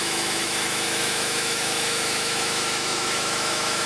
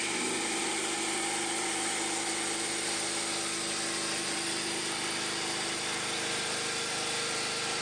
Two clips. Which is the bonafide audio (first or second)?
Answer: second